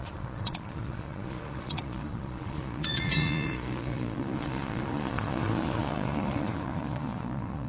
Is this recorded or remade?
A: remade